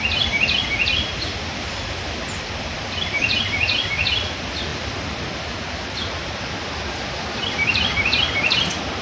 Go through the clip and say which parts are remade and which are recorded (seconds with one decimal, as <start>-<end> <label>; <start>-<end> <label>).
0.0-9.0 recorded